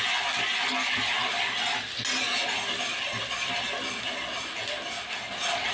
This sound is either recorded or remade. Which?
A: recorded